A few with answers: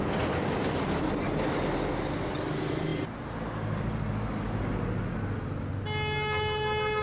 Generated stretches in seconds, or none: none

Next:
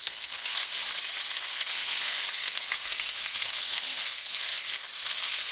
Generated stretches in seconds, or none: 0.0-0.7 (codec, SNAC); 1.2-5.5

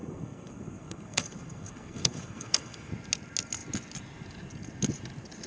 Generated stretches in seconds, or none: 0.0-2.9 (codec, SNAC)

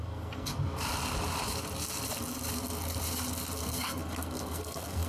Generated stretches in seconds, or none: 0.0-0.5 (codec, SNAC); 3.6-5.1

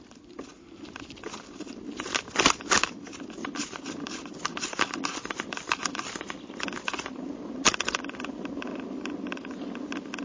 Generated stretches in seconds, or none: none